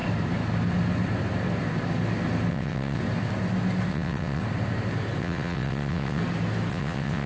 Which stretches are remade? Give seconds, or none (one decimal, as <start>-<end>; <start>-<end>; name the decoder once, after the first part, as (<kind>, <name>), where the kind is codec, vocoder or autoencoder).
2.5-3.0 (vocoder, WaveNeXt); 3.9-4.4; 5.2-6.2; 6.7-7.3